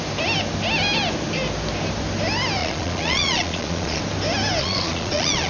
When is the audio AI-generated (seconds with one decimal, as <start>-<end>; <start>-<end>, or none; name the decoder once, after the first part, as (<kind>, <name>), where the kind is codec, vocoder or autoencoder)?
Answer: 2.6-4.0 (vocoder, Vocos); 4.6-5.5